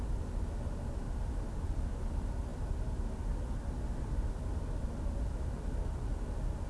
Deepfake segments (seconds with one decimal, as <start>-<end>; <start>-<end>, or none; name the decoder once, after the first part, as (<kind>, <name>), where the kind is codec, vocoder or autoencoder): none